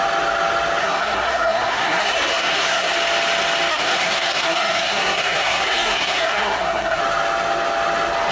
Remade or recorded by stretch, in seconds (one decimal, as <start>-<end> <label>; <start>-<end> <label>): 0.0-0.8 recorded; 0.8-2.9 remade; 2.9-3.7 recorded; 3.7-7.0 remade; 7.0-8.3 recorded